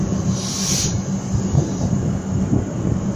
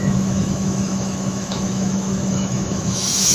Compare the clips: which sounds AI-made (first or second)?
second